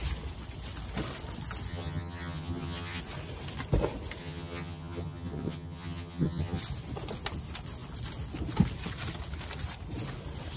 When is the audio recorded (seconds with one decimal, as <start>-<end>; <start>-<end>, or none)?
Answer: 0.0-1.7; 3.0-4.2; 6.6-10.6